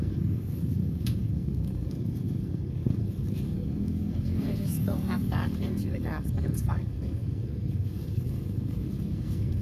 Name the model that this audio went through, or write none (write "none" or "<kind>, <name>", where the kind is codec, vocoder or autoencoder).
codec, SNAC